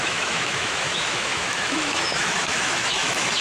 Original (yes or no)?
no